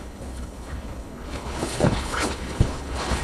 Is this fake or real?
fake